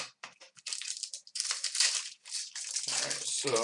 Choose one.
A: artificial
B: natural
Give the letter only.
A